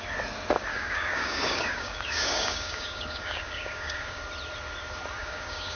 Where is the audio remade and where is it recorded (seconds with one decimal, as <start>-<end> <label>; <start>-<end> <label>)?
0.0-0.7 recorded; 0.7-4.2 remade; 4.2-5.2 recorded; 5.2-5.8 remade